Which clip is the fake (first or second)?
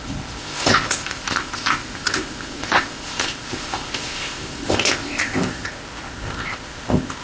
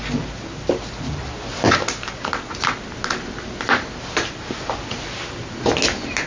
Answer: first